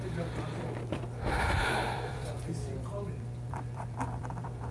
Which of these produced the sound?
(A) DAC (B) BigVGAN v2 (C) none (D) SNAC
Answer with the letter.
B